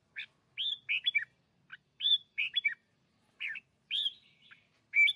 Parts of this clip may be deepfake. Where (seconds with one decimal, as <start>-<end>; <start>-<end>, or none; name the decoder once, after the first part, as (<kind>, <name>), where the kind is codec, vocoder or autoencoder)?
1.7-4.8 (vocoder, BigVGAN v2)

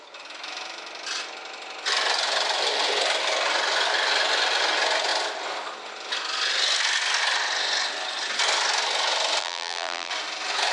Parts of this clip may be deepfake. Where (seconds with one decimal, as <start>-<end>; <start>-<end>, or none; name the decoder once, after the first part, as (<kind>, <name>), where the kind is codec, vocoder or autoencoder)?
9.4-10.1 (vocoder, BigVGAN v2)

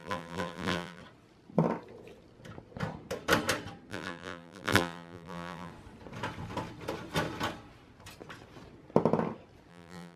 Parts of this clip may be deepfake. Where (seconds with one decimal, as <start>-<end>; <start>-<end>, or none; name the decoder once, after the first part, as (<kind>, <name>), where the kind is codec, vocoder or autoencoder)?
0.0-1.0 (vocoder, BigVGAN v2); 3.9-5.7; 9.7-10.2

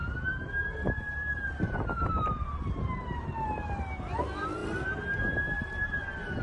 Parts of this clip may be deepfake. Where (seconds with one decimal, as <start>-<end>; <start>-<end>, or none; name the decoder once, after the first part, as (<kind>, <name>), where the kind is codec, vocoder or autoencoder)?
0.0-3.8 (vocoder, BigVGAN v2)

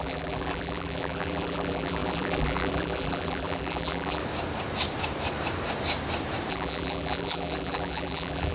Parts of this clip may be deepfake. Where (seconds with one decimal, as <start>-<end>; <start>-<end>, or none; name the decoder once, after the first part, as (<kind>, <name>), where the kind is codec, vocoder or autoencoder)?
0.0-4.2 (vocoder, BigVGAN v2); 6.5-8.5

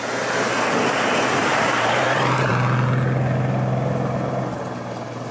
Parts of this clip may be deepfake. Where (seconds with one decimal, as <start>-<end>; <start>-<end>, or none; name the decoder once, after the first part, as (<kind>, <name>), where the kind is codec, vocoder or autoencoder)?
1.4-2.5 (vocoder, BigVGAN v2)

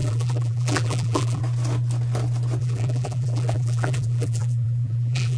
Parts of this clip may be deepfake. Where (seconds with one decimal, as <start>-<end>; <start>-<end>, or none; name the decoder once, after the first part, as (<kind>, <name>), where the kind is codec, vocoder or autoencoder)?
0.0-1.4 (vocoder, BigVGAN v2); 2.6-5.4